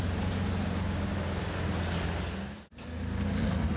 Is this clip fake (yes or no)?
no